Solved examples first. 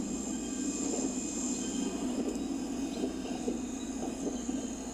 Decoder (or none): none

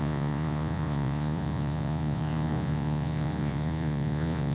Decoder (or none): vocoder, Vocos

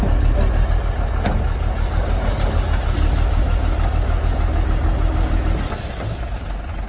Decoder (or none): none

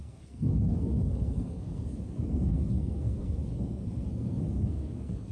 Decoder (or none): codec, SNAC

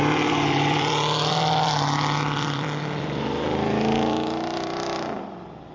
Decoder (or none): vocoder, BigVGAN v2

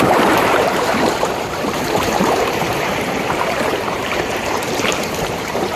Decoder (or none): vocoder, BigVGAN v2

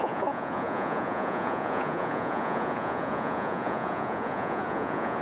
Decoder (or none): vocoder, Vocos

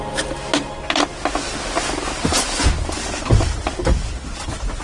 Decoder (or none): none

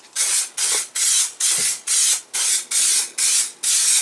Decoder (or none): none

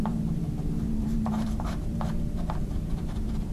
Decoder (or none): vocoder, BigVGAN v2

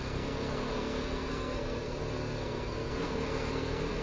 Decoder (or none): codec, SNAC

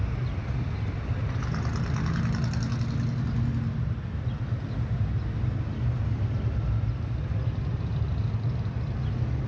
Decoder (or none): none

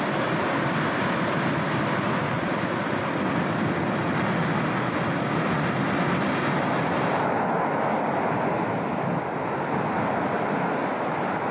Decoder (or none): none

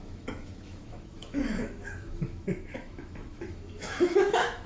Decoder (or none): autoencoder, DAC-VAE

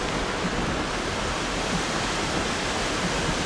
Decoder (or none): vocoder, BigVGAN v2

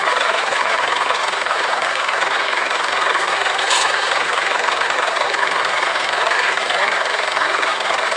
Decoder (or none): codec, SNAC